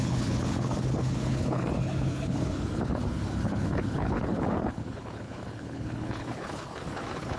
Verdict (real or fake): fake